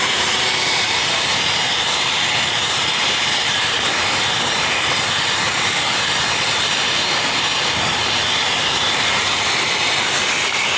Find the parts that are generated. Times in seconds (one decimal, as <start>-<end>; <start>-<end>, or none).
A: 0.0-10.8